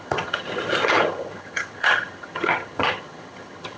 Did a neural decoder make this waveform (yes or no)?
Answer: yes